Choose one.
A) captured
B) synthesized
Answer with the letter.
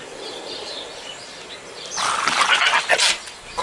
A